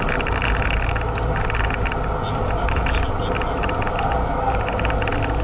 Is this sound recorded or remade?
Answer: recorded